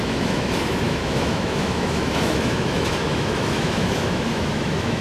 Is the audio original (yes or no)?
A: no